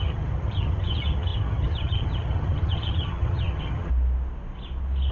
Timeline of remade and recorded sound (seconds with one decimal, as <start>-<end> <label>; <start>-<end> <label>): 0.0-3.9 remade; 3.9-5.1 recorded

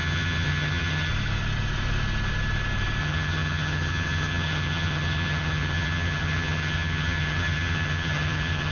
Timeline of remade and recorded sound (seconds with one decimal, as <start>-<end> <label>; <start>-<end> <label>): 0.0-1.1 remade; 1.1-3.0 recorded; 3.0-8.7 remade

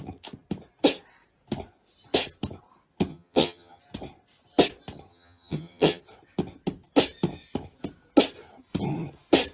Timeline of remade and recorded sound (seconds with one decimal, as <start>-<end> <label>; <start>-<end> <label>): 0.0-3.1 recorded; 3.1-3.8 remade; 3.8-5.1 recorded; 5.1-6.0 remade; 6.0-9.5 recorded